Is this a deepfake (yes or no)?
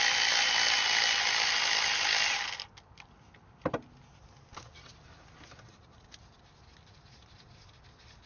no